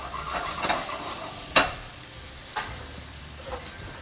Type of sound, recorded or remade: remade